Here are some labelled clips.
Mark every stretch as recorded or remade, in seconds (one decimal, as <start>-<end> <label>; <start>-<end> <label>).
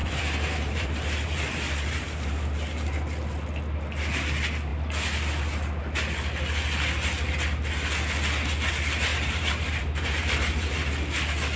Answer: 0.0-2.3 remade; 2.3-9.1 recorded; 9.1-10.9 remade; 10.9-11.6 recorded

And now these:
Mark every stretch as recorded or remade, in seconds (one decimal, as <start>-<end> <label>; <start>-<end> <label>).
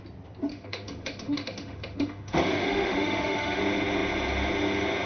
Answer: 0.0-0.5 recorded; 0.5-3.6 remade; 3.6-5.1 recorded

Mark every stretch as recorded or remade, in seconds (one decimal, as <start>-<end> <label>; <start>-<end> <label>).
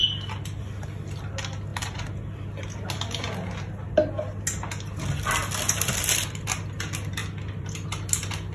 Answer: 0.0-8.5 recorded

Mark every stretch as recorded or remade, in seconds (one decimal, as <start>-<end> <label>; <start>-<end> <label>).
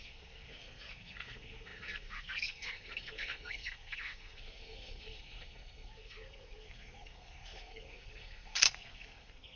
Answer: 0.0-9.6 remade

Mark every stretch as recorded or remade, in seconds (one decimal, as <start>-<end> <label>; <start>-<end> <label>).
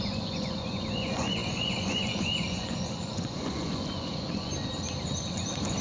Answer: 0.0-4.5 remade; 4.5-5.3 recorded; 5.3-5.8 remade